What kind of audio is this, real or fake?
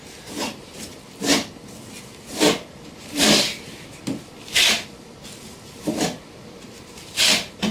real